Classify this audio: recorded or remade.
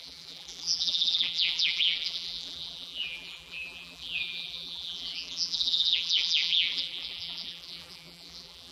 remade